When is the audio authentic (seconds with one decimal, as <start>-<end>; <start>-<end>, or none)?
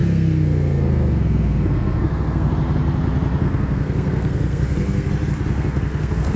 2.5-3.4; 5.1-5.5